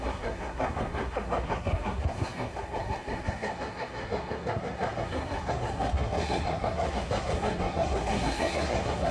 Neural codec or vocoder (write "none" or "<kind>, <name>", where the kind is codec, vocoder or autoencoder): codec, SNAC